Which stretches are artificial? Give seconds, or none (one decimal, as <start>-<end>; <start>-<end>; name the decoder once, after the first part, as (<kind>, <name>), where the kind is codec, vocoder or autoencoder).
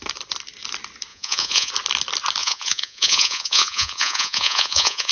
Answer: 1.1-1.7 (vocoder, Vocos); 2.4-5.1